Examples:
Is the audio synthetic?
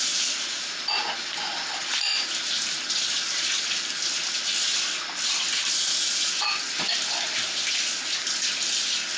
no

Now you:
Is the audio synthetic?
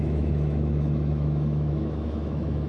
yes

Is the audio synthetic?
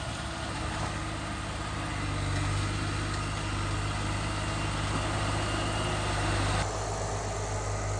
no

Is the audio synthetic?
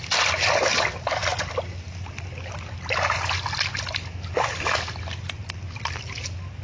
no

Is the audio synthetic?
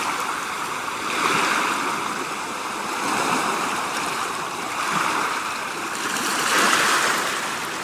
yes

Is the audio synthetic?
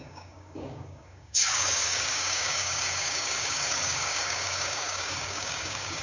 yes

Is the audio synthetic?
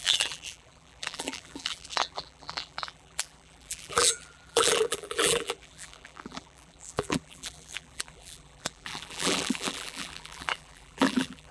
yes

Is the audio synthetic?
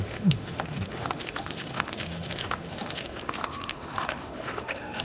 yes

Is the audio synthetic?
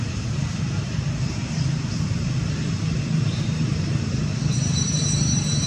yes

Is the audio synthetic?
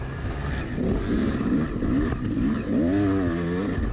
no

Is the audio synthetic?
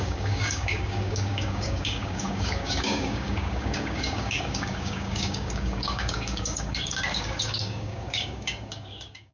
yes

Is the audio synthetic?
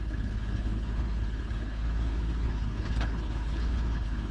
yes